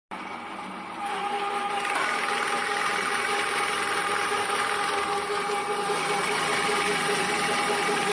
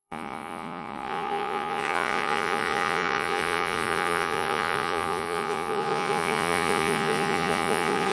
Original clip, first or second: first